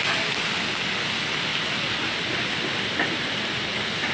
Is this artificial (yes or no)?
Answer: no